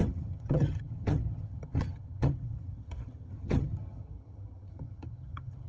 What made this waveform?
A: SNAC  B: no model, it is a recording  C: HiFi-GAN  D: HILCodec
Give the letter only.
C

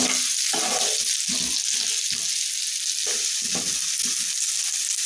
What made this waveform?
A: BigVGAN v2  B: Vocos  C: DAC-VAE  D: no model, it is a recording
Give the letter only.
D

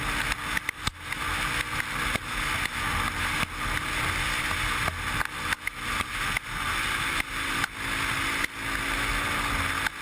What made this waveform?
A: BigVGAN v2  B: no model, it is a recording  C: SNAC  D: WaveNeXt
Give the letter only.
B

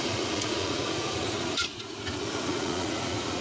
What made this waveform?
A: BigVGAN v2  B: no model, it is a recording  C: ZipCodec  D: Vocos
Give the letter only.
D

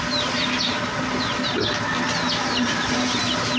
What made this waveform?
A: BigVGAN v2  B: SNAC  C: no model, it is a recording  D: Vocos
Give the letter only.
C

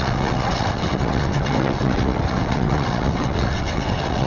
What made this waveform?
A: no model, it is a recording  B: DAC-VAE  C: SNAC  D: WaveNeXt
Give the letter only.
D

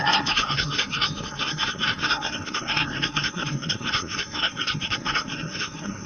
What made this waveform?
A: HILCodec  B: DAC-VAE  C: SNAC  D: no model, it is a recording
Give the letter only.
C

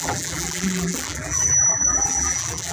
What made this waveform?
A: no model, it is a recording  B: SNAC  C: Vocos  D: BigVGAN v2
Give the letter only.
D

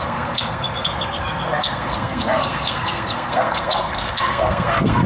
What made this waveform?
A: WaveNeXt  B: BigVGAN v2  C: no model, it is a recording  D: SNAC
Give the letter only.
D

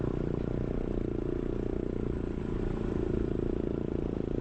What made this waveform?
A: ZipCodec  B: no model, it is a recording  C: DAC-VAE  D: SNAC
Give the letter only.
B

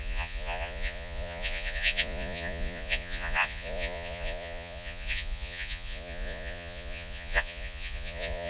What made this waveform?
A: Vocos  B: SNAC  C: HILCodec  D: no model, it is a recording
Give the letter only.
A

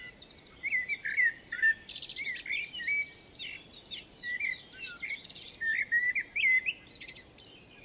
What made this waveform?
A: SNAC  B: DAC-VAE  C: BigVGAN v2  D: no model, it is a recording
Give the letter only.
D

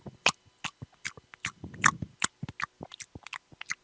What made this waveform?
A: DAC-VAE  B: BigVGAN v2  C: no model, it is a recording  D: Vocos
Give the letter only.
C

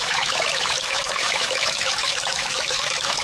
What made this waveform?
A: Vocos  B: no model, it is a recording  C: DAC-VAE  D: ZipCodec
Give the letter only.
C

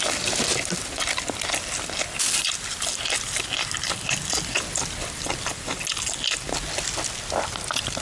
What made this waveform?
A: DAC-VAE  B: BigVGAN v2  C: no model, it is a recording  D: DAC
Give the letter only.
C